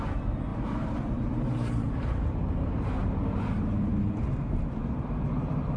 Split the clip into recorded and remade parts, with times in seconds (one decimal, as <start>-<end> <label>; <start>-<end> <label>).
0.0-0.5 recorded; 0.5-4.0 remade; 4.0-5.8 recorded